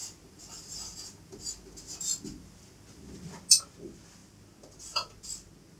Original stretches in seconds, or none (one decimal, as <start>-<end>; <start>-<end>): 0.0-5.8